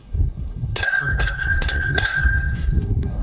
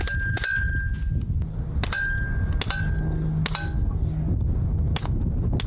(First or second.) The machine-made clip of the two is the first